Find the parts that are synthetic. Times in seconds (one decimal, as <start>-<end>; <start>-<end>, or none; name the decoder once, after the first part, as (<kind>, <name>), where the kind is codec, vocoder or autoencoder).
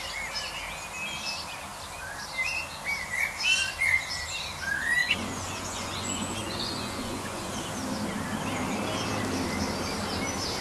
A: 5.0-7.5 (vocoder, Vocos)